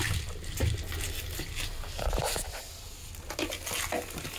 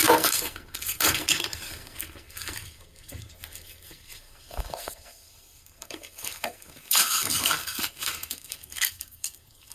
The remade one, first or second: second